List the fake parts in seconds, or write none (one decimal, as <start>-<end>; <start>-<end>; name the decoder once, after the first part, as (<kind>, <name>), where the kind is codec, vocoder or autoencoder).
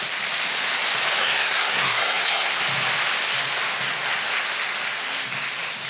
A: 1.2-2.6 (codec, SNAC)